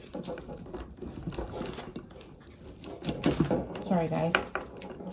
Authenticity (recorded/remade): recorded